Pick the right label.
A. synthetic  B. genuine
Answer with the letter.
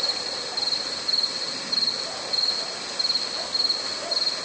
B